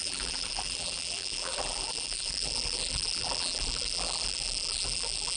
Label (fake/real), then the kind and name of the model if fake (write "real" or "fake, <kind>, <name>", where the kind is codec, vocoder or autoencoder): fake, vocoder, BigVGAN v2